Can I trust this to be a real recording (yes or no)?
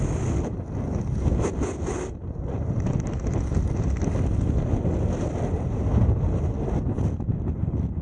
yes